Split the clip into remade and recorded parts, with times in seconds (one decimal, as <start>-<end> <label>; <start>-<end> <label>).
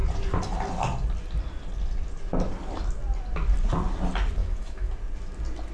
0.0-4.4 recorded; 4.4-4.9 remade; 4.9-5.7 recorded